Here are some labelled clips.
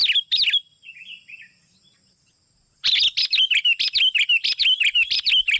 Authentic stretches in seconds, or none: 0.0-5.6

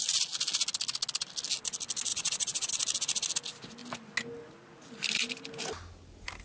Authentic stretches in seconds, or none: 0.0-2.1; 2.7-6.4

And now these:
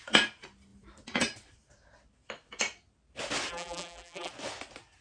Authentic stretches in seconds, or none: 0.0-3.5; 4.3-5.0

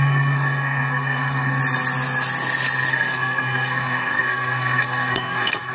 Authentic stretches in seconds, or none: 1.6-2.9